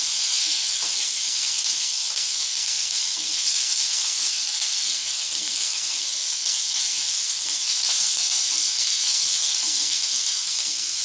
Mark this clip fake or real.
fake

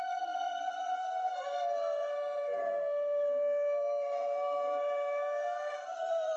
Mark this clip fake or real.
fake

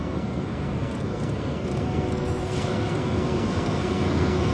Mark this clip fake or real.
fake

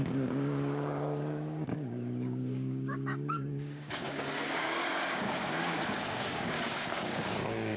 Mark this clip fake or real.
fake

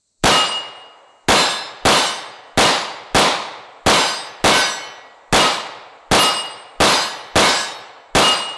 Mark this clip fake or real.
real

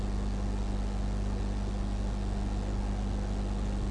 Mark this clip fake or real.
real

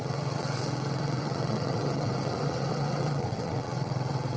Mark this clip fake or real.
fake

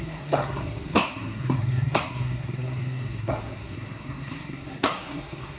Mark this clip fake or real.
fake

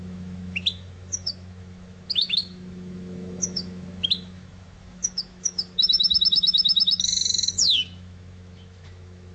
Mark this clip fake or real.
fake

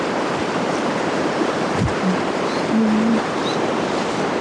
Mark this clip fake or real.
real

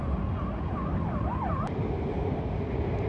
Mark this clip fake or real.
real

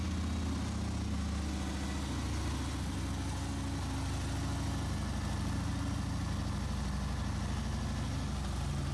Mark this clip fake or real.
real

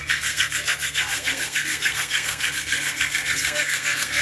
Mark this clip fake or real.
fake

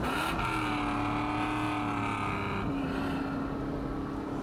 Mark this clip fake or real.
real